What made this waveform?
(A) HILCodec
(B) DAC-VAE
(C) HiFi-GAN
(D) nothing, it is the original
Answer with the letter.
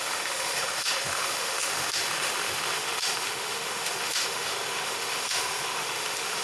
B